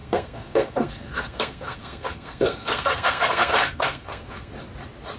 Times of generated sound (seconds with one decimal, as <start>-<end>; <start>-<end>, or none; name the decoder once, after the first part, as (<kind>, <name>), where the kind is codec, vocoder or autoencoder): 0.0-4.5 (codec, SNAC)